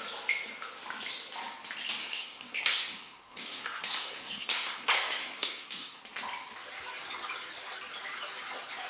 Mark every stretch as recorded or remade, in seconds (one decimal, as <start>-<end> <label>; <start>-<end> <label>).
0.0-2.0 recorded; 2.0-6.0 remade; 6.0-8.9 recorded